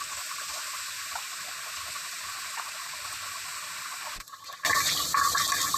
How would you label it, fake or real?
real